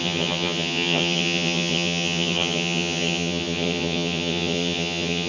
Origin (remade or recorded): remade